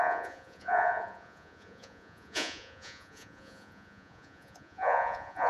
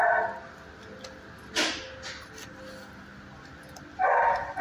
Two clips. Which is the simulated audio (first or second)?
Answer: first